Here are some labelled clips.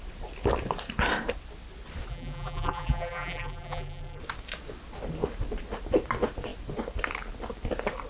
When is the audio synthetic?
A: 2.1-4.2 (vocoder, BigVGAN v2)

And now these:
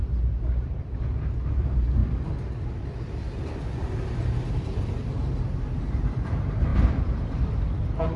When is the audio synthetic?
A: 0.0-2.0 (vocoder, BigVGAN v2); 5.4-8.2

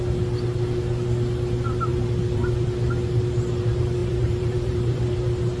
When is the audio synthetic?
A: 4.0-5.0 (vocoder, BigVGAN v2)

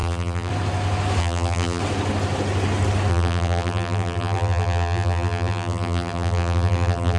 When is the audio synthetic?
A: 0.0-0.5 (vocoder, BigVGAN v2); 1.2-1.8; 3.1-7.2

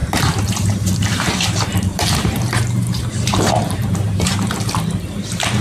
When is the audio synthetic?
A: 0.0-5.6 (vocoder, BigVGAN v2)

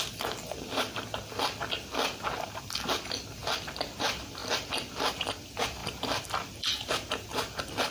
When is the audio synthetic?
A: 3.4-4.0 (vocoder, BigVGAN v2); 5.8-6.9

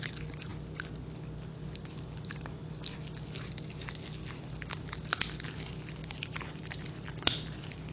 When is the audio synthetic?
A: 6.0-6.8 (vocoder, BigVGAN v2)

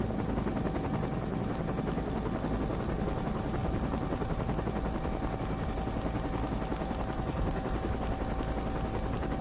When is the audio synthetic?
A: 3.6-4.6 (vocoder, BigVGAN v2); 6.7-8.1